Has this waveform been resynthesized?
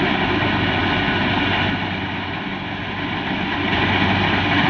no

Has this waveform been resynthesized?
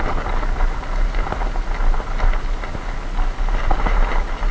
no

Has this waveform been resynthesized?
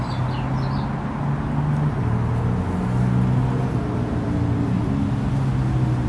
no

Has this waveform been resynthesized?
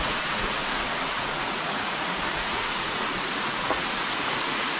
yes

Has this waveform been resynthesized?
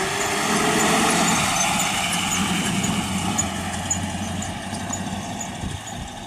no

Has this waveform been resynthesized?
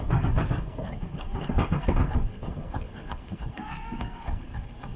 yes